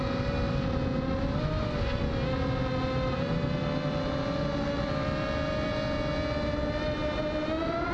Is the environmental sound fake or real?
real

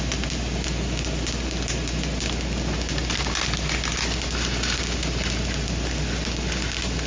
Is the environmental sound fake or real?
real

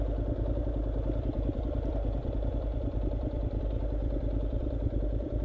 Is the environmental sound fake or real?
fake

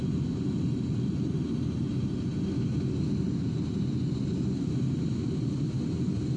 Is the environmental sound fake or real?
real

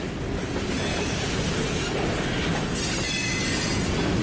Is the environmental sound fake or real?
real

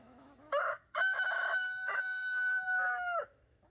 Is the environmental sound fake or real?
fake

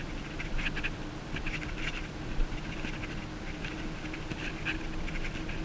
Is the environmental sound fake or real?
real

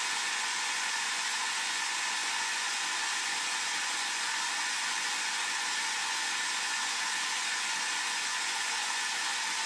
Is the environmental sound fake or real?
fake